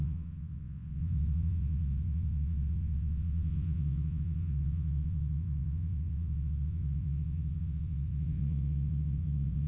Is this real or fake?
fake